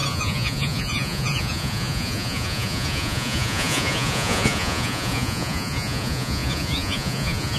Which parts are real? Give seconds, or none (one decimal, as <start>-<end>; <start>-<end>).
none